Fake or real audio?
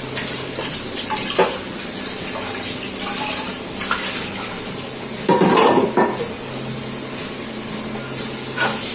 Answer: real